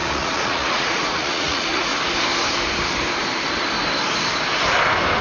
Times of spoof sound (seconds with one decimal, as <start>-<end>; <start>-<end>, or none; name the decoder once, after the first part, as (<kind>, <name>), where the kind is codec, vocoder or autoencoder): 0.0-1.9 (vocoder, Vocos)